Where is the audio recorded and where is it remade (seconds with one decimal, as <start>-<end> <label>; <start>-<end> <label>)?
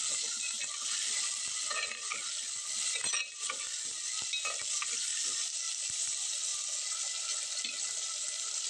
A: 0.0-8.7 recorded